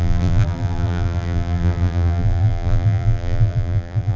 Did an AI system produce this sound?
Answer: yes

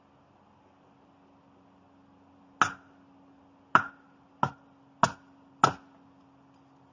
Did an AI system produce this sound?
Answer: no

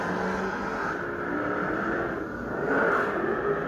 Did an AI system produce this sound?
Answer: no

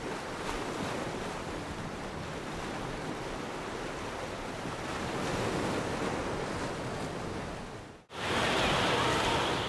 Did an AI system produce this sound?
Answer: no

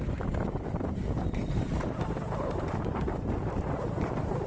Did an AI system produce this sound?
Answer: yes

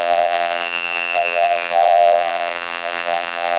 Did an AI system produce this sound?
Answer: yes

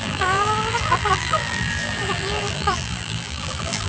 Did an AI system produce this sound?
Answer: yes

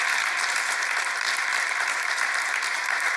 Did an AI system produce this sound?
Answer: yes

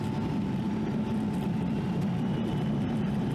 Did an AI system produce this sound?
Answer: yes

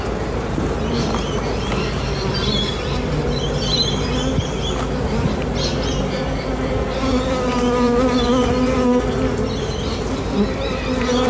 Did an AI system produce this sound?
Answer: no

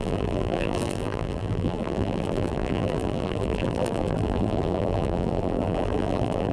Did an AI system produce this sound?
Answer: yes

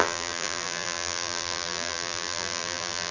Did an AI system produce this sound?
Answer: yes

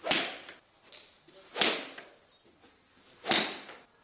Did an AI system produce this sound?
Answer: no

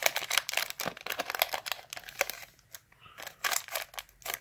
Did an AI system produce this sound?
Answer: no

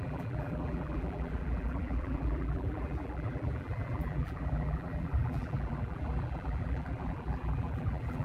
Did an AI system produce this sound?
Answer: yes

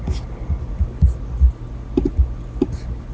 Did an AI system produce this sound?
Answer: no